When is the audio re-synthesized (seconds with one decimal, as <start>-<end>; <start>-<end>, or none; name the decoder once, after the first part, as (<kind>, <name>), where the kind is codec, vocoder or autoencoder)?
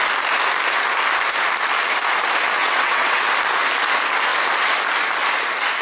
2.6-3.3 (vocoder, WaveNeXt)